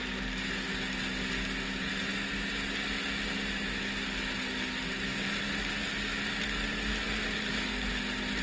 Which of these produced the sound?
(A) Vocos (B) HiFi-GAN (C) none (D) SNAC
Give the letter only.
C